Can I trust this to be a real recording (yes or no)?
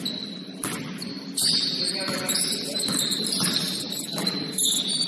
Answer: no